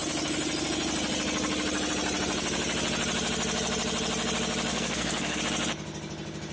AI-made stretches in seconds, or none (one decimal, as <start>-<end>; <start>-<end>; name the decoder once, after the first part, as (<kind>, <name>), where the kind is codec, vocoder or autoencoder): 4.7-5.4 (codec, SNAC)